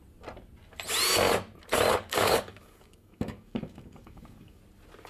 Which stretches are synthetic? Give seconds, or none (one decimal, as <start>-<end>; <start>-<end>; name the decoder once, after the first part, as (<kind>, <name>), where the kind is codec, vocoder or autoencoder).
1.9-4.6 (codec, DAC)